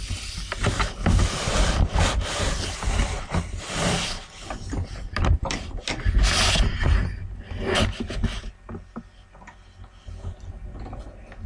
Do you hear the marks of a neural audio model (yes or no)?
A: no